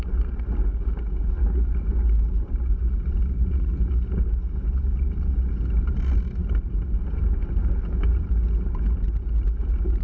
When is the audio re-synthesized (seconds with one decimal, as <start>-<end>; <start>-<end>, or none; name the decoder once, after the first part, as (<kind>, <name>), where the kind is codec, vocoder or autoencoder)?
none